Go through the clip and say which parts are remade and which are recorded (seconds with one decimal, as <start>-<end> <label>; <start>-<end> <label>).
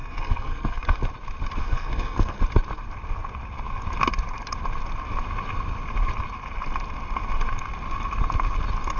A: 0.0-1.0 remade; 1.0-1.6 recorded; 1.6-2.4 remade; 2.4-9.0 recorded